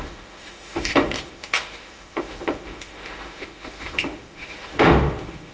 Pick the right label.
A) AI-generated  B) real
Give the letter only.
A